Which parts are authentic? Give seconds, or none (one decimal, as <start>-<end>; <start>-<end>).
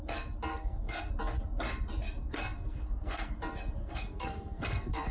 0.0-0.5; 1.1-2.2; 3.3-3.8